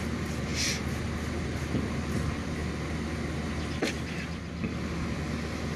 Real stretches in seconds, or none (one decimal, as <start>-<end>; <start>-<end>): 0.0-5.8

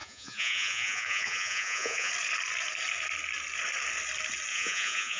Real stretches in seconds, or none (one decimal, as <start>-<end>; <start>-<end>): 2.1-4.5

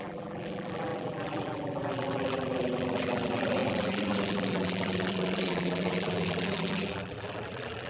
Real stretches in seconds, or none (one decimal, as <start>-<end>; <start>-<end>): none

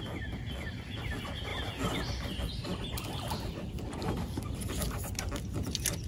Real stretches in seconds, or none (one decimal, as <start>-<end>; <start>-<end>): 0.0-6.1

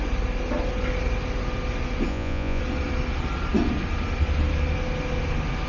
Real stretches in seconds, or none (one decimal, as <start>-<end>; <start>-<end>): 0.0-2.1; 2.6-5.7

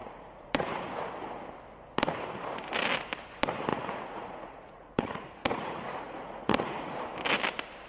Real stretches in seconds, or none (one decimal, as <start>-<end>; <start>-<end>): 1.0-3.7; 7.0-7.9

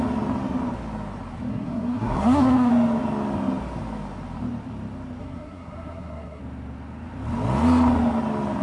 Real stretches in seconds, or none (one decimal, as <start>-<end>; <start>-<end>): 0.0-1.5; 2.7-5.2; 6.4-8.6